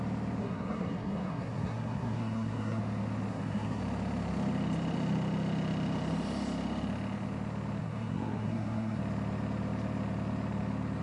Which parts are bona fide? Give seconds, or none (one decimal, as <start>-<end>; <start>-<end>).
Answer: 0.0-0.4; 2.8-3.3; 3.8-7.8; 9.0-11.0